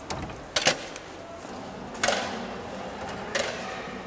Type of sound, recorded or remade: recorded